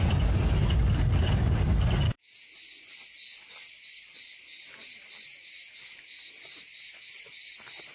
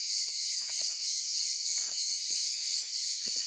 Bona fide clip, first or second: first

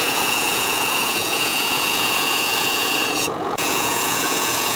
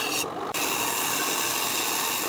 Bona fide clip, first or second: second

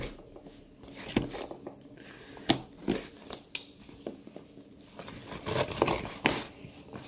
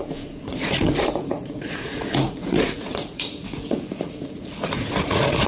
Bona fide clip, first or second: first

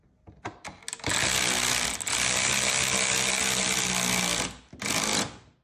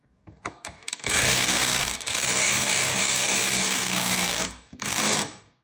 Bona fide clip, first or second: first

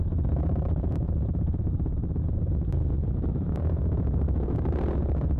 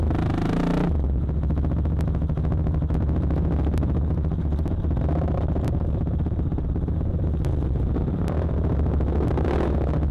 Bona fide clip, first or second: second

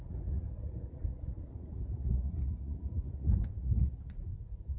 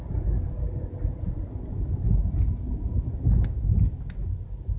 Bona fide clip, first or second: second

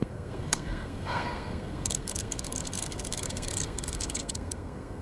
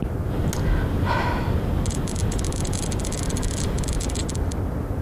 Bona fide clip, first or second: second